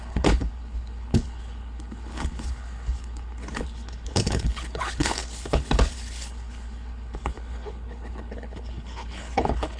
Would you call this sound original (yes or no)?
no